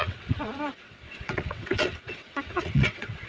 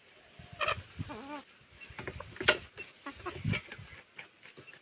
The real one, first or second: second